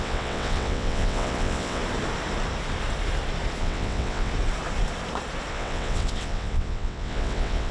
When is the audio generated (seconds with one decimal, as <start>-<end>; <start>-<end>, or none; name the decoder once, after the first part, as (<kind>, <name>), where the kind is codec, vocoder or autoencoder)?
0.0-1.8 (vocoder, WaveNeXt); 3.6-4.3; 5.5-7.7